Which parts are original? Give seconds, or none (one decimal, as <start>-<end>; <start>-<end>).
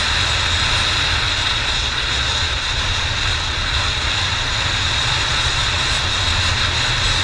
0.0-1.4; 2.8-3.3; 4.1-5.0; 6.0-7.2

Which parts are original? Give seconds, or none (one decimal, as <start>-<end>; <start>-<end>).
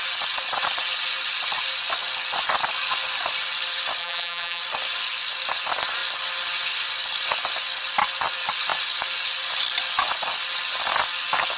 0.0-4.0; 4.6-11.6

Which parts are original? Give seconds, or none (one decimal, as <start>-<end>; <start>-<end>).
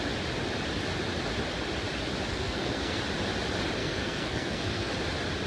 0.0-2.3; 3.0-3.8; 4.9-5.5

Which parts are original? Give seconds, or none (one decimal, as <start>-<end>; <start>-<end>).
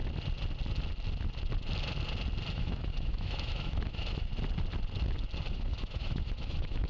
0.0-2.5; 4.3-5.5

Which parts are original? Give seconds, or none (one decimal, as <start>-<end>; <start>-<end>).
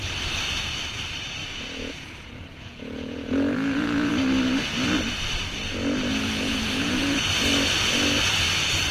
0.0-1.4; 4.1-6.1; 7.2-8.9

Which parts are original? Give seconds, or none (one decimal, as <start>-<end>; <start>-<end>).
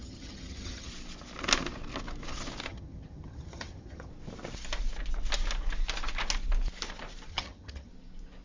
0.9-2.7; 4.1-7.3; 7.9-8.4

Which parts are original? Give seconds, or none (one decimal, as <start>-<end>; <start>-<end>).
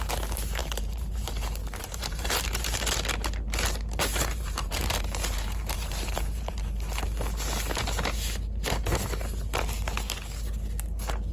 0.0-0.6; 2.9-4.1; 6.6-11.3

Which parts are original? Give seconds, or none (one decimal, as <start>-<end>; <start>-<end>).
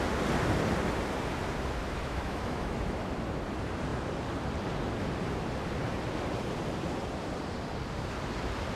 0.0-1.8; 3.1-8.8